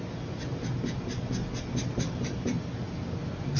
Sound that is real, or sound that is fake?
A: real